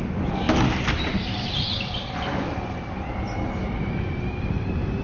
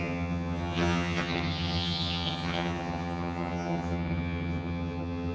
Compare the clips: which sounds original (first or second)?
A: first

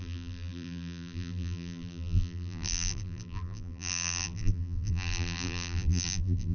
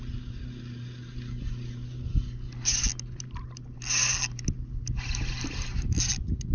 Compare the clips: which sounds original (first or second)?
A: second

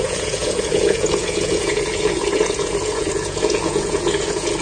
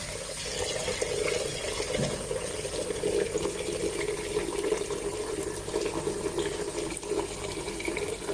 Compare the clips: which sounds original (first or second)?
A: second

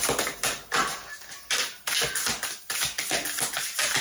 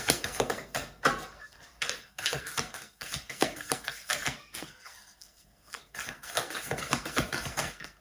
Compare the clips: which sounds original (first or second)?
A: first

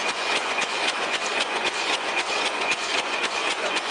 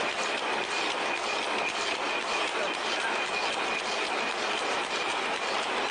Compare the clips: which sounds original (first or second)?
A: second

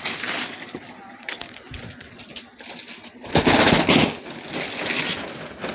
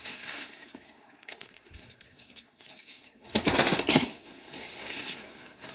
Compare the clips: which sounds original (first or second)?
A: first